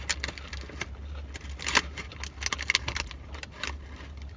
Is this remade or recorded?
recorded